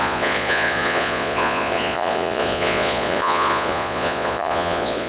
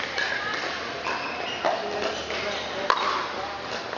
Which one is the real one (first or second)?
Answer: second